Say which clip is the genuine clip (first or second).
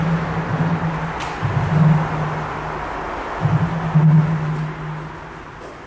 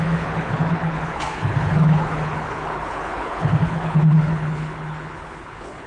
first